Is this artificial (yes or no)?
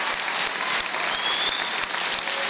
no